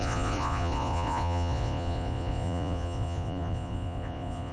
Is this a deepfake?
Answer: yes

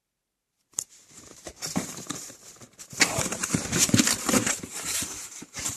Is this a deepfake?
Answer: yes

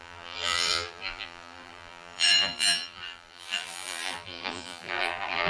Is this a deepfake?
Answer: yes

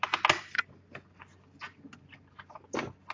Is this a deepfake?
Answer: no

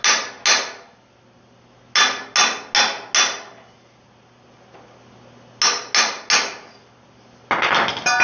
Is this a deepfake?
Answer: no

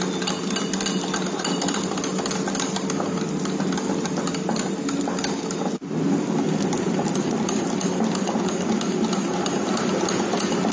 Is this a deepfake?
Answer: no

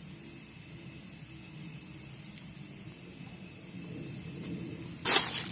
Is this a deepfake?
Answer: no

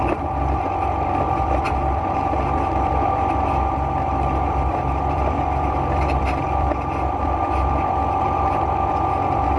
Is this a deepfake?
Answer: yes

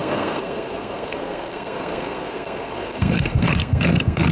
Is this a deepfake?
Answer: yes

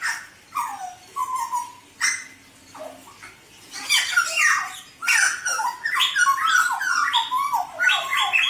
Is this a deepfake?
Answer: no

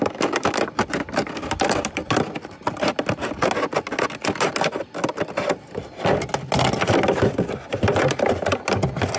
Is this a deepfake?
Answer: no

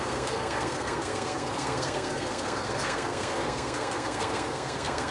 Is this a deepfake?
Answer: yes